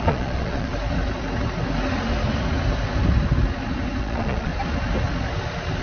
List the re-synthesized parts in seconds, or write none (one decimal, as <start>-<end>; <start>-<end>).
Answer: 0.0-0.7; 4.0-4.5